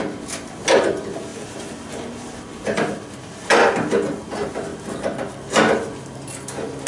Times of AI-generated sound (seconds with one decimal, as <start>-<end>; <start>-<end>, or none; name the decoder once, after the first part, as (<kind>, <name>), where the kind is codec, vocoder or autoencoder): none